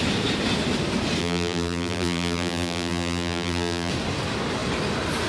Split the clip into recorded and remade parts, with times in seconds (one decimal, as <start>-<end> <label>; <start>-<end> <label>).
0.0-1.2 recorded; 1.2-3.9 remade; 3.9-5.3 recorded